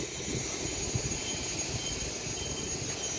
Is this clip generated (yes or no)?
no